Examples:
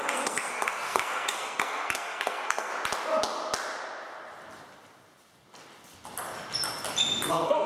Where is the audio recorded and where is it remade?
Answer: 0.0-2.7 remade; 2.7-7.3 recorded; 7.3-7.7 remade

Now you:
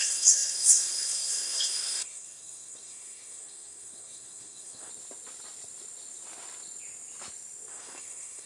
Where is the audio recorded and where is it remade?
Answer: 0.0-4.9 remade; 4.9-7.7 recorded; 7.7-8.5 remade

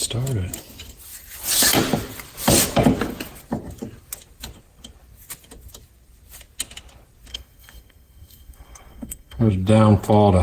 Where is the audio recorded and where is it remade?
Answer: 0.0-7.3 recorded; 7.3-9.5 remade; 9.5-10.4 recorded